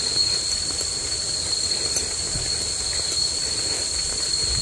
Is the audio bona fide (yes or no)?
yes